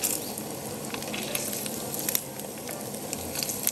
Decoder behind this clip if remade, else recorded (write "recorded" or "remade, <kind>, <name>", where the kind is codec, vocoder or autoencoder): recorded